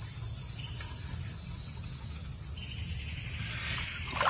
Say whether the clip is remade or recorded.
recorded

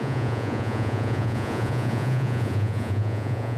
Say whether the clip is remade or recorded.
remade